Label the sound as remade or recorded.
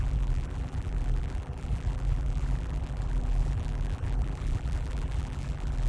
remade